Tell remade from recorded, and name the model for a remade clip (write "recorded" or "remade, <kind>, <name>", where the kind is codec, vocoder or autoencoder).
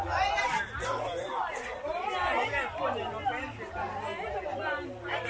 recorded